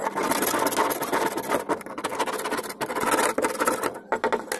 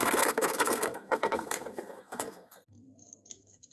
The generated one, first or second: second